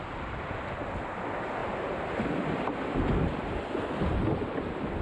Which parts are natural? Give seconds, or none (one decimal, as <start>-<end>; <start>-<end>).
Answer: 0.0-5.0